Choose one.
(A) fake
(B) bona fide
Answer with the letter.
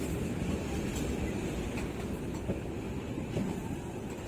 B